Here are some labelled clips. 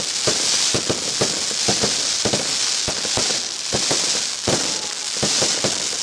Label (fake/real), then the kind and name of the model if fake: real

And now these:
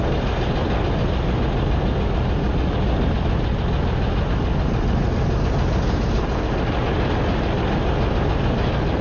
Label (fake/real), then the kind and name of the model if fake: real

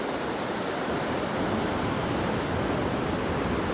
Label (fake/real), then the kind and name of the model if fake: real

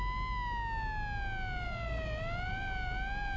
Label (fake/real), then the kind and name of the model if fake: real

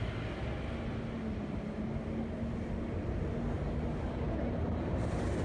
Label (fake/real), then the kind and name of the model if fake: real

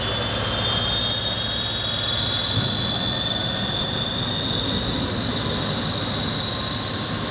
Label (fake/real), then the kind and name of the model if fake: real